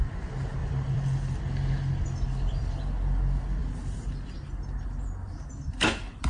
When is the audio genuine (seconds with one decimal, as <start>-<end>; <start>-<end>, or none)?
0.0-0.6; 1.4-6.3

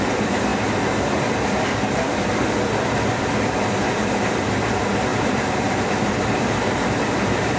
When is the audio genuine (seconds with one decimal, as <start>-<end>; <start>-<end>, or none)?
0.0-0.5; 1.3-5.1

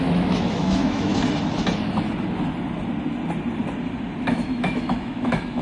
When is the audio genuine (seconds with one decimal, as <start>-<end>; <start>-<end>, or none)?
1.1-4.2

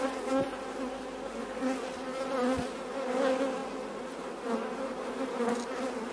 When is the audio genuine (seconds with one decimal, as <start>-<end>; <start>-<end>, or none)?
0.0-6.1